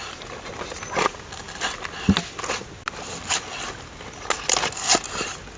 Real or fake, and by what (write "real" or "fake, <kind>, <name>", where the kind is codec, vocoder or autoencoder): real